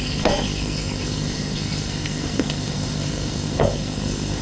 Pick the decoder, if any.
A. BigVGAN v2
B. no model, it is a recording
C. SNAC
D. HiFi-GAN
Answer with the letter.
C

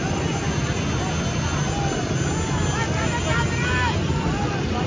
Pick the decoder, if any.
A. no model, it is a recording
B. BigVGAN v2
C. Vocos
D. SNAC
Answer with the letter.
A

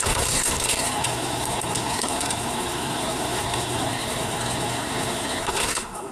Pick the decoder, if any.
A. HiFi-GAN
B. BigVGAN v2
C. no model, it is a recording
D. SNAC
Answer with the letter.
D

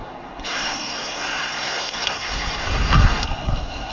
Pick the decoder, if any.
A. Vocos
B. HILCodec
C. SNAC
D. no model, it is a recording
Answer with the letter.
C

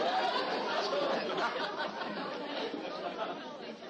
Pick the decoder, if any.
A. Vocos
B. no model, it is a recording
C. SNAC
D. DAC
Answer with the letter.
B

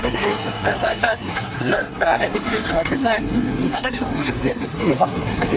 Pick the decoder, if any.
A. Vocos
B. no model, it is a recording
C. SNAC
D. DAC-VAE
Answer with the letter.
C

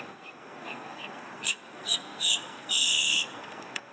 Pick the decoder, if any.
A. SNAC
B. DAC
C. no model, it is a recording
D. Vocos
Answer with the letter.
A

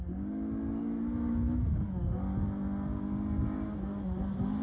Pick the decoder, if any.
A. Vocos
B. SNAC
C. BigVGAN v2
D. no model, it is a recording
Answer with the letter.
D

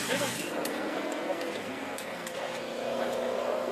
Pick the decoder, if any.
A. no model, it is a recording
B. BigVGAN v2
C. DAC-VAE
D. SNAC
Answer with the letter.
D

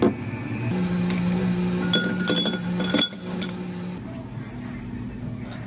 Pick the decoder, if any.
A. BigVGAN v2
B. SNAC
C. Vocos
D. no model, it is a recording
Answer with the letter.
D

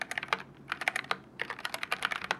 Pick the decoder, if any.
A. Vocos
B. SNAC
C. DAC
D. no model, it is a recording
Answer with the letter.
D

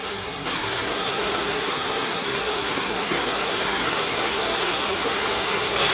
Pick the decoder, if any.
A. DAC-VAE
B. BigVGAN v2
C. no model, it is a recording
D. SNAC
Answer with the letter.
D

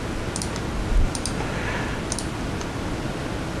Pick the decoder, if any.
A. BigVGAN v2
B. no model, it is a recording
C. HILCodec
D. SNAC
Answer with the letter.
B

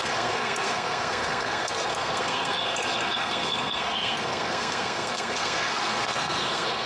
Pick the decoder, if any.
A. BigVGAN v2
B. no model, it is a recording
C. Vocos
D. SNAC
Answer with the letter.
D